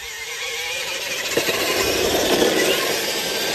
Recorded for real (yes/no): yes